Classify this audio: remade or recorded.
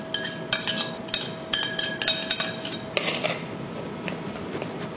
recorded